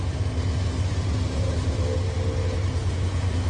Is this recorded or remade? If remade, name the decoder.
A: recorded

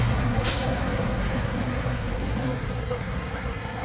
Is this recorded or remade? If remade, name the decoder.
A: remade, codec, SNAC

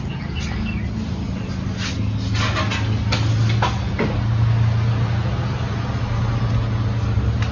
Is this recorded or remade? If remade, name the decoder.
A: recorded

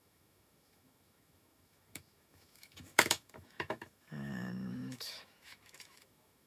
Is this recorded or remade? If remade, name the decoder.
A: remade, autoencoder, DAC-VAE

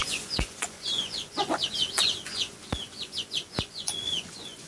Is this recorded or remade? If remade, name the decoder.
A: remade, vocoder, Vocos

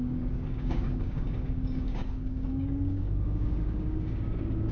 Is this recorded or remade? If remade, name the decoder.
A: remade, codec, DAC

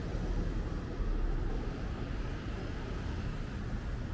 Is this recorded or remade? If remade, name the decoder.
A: recorded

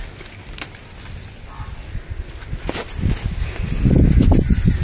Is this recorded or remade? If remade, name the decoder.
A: recorded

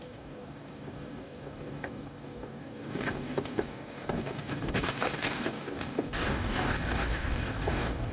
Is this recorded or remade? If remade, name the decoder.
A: remade, codec, DAC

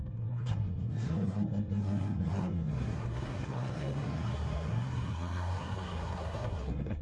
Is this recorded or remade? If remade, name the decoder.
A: remade, codec, SNAC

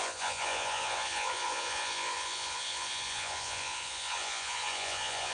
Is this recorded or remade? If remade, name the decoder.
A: remade, vocoder, Vocos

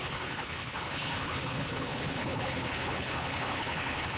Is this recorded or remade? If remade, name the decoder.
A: remade, codec, HILCodec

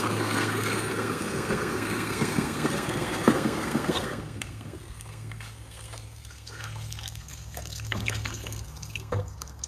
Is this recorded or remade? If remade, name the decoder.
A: remade, codec, SNAC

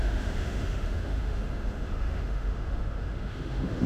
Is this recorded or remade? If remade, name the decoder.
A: remade, autoencoder, DAC-VAE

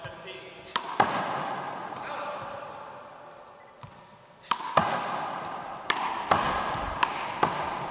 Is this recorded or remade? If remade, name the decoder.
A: recorded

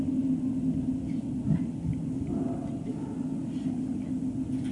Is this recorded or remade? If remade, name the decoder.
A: recorded